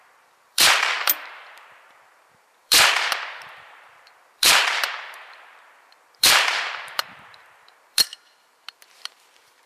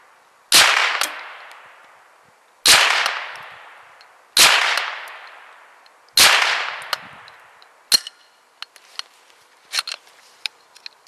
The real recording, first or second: second